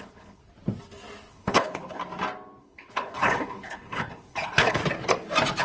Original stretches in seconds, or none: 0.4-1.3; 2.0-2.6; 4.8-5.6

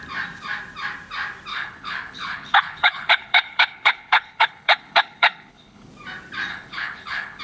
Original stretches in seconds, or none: 0.0-1.5; 5.9-6.5

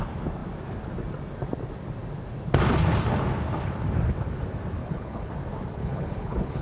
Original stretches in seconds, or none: 0.0-4.8; 5.3-5.8

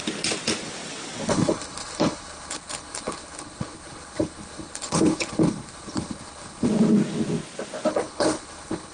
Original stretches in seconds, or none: 0.0-1.3; 6.7-7.9

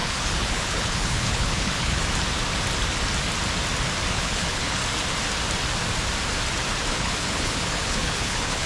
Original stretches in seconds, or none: 2.0-4.1; 4.8-6.9

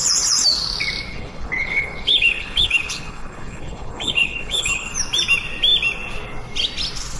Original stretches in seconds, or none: 0.0-1.1; 4.9-7.2

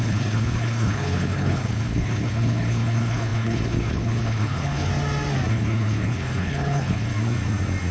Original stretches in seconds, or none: 4.9-5.5; 7.1-7.9